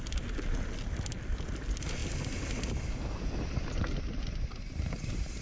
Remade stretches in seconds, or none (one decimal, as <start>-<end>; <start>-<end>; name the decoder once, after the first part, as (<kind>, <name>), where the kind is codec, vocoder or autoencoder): none